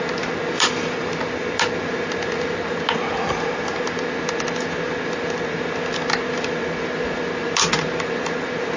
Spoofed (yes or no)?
no